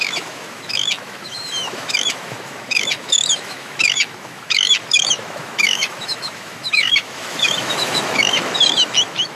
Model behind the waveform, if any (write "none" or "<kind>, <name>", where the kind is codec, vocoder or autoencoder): autoencoder, DAC-VAE